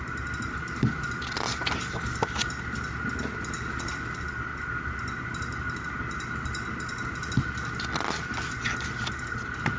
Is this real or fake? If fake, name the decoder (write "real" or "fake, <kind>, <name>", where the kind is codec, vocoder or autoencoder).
real